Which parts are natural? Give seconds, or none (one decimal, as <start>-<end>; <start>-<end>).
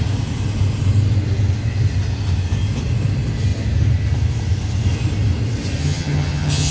0.0-5.8